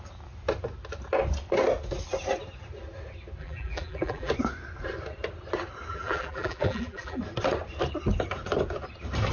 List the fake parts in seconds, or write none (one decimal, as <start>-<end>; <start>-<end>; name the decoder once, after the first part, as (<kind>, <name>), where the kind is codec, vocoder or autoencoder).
3.4-4.3 (vocoder, BigVGAN v2); 5.9-7.2